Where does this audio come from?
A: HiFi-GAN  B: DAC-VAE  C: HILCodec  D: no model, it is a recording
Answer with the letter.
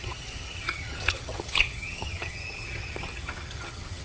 A